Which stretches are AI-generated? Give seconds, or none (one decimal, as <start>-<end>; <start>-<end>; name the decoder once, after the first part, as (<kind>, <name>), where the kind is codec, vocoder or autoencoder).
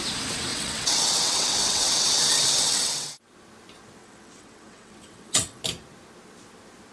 0.5-3.2 (vocoder, WaveNeXt); 4.0-5.6